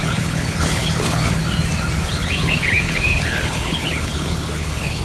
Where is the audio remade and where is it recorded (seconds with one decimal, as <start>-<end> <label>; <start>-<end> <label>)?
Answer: 0.0-1.4 remade; 1.4-2.1 recorded; 2.1-5.0 remade